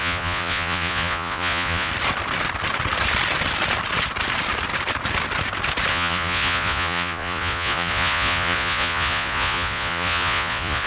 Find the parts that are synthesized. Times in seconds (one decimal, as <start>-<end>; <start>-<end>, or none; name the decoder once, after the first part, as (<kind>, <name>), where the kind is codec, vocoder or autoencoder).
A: 0.0-1.9 (vocoder, Vocos); 5.9-10.9